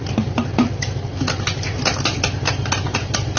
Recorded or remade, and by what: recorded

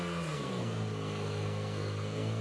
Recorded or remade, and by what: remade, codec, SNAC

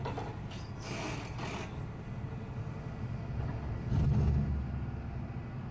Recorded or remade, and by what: recorded